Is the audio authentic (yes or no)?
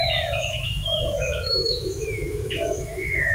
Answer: no